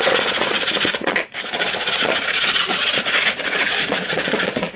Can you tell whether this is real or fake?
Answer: fake